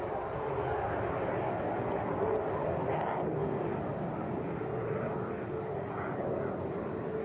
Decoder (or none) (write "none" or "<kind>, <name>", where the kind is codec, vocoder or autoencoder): none